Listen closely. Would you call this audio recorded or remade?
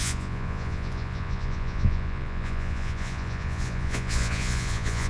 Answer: remade